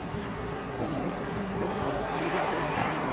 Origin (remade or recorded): remade